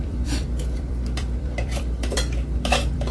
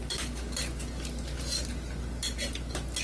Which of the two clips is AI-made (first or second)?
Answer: first